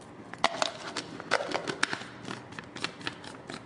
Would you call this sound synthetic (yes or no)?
no